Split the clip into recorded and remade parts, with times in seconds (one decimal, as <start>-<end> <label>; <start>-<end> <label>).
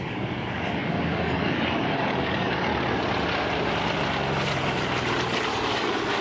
0.0-2.7 remade; 2.7-5.5 recorded; 5.5-6.2 remade